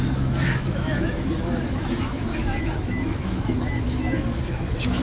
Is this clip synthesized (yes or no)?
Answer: yes